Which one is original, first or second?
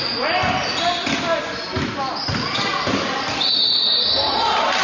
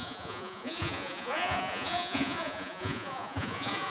first